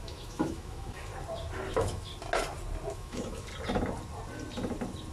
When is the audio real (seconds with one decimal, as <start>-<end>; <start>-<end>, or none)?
1.1-1.7; 2.1-2.9; 3.5-5.1